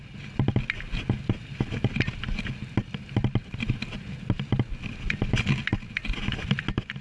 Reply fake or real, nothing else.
real